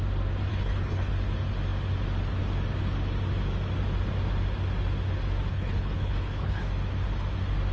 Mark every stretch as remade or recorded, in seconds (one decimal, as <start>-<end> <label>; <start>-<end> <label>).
0.0-0.5 recorded; 0.5-1.1 remade; 1.1-5.5 recorded; 5.5-6.6 remade; 6.6-7.7 recorded